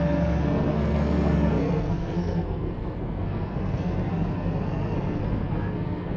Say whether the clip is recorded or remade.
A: remade